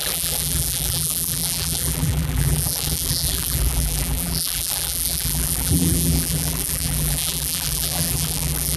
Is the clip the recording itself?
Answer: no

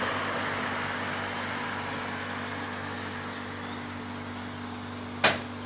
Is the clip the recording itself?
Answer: yes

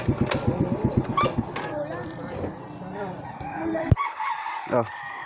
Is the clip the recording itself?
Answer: no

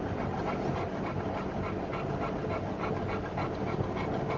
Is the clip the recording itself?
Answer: yes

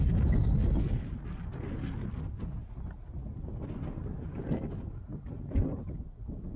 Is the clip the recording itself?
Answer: yes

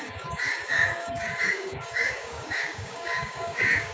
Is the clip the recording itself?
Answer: no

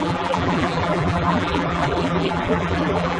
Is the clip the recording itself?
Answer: no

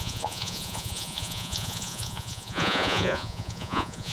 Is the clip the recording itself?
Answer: no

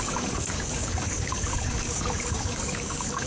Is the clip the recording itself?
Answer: no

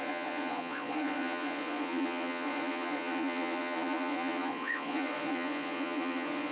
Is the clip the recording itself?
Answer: no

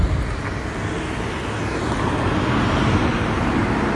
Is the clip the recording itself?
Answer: yes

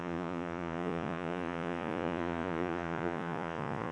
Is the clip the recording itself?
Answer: no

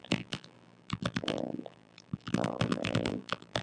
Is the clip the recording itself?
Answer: no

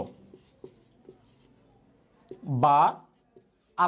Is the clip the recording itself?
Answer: yes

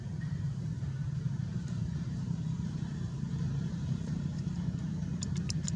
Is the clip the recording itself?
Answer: no